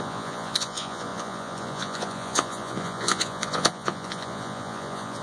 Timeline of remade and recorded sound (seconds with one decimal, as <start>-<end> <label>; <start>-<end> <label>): 0.0-5.2 remade

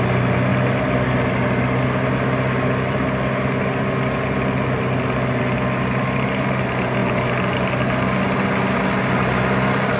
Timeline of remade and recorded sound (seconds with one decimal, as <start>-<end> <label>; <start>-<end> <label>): 0.0-10.0 recorded